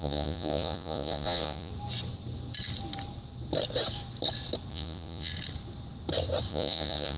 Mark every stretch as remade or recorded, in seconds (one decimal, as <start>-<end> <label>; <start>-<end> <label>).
0.0-1.7 remade; 1.7-4.7 recorded; 4.7-5.3 remade; 5.3-6.5 recorded; 6.5-7.2 remade